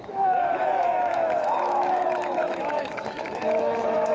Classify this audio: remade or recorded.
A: remade